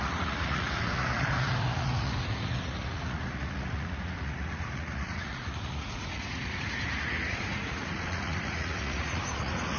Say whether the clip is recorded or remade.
remade